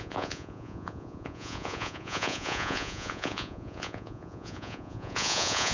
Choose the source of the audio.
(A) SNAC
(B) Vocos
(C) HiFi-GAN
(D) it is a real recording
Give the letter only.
B